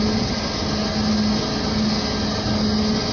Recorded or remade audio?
recorded